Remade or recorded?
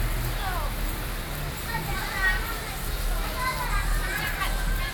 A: recorded